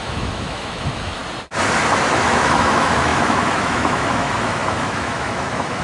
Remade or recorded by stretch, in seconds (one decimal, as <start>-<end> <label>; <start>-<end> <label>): 0.0-1.2 remade; 1.2-2.1 recorded; 2.1-5.8 remade